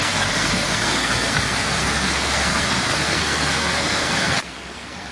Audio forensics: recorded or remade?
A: remade